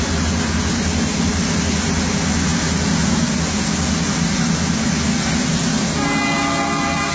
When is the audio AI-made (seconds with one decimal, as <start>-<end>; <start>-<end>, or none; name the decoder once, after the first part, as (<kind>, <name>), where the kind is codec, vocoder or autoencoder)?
none